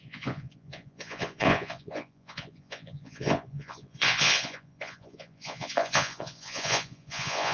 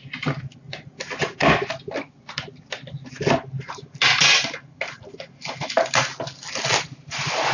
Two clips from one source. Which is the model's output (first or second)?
first